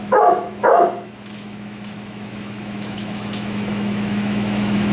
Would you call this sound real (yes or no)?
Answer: no